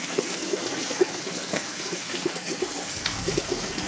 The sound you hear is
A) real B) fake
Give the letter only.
B